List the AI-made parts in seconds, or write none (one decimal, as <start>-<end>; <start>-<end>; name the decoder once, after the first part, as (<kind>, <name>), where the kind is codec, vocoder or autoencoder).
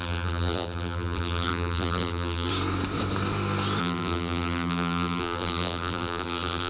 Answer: 0.0-2.5 (vocoder, BigVGAN v2); 3.8-6.7